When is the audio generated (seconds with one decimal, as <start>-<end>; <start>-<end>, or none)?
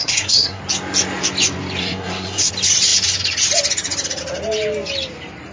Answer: 0.0-0.6; 1.8-2.5